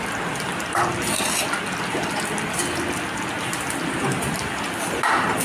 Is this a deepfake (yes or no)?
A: no